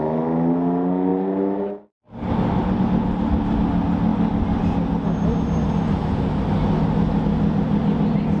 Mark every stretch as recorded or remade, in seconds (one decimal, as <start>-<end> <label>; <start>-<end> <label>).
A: 0.0-8.4 recorded